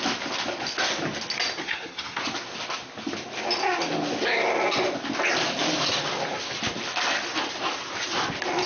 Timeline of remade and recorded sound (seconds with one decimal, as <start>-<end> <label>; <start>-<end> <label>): 0.0-1.6 recorded; 1.6-2.2 remade; 2.2-8.7 recorded